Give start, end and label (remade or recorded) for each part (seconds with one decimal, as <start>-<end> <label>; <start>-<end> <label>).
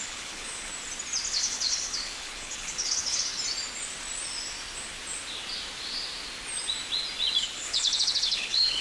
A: 0.0-0.7 remade; 0.7-1.3 recorded; 1.3-3.3 remade; 3.3-7.4 recorded; 7.4-8.8 remade